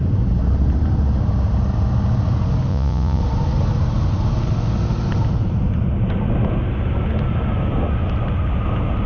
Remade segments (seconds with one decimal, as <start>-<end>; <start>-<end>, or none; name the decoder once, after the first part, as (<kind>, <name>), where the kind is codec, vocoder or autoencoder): 2.7-3.2 (vocoder, Vocos)